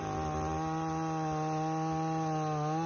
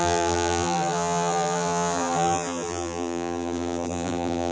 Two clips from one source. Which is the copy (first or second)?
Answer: second